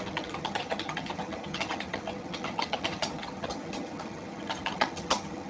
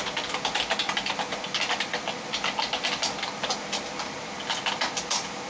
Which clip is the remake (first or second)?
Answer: first